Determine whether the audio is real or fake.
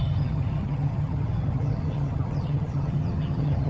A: fake